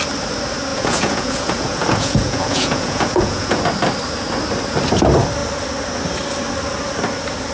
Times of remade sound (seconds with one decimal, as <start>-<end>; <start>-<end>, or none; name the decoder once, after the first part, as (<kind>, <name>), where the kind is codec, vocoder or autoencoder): 0.7-3.6 (vocoder, Vocos)

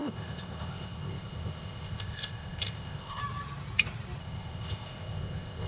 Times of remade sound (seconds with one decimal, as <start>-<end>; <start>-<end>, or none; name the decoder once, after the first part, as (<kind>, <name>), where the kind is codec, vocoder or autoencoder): 0.0-3.2 (codec, ZipCodec); 4.2-5.7